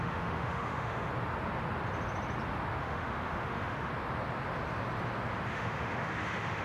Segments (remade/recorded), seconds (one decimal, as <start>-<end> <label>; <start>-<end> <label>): 0.0-1.1 remade; 1.1-2.8 recorded; 2.8-3.9 remade; 3.9-5.5 recorded; 5.5-6.6 remade